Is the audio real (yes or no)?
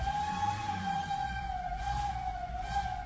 no